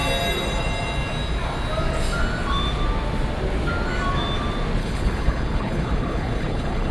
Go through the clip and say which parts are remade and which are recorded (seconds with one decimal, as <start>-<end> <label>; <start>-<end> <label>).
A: 0.0-4.8 recorded; 4.8-6.9 remade